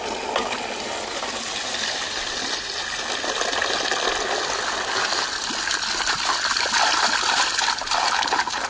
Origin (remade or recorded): recorded